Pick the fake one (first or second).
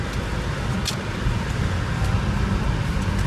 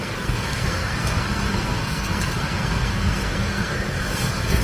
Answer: second